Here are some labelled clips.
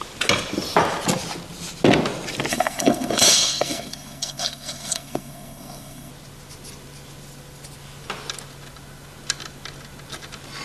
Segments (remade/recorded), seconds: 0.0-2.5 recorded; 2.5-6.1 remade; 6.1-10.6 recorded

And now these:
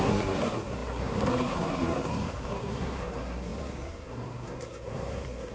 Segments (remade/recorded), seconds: 0.0-5.5 remade

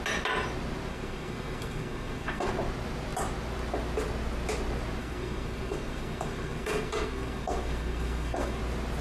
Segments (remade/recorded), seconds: 0.0-0.9 recorded; 0.9-2.5 remade; 2.5-5.0 recorded; 5.0-8.6 remade; 8.6-9.0 recorded

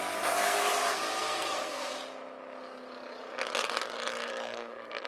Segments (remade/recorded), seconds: 0.0-1.9 remade; 1.9-4.3 recorded; 4.3-5.1 remade

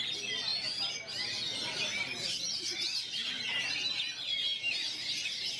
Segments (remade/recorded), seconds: 0.0-5.6 recorded

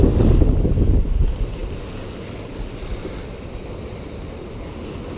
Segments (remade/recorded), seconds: 0.0-5.2 recorded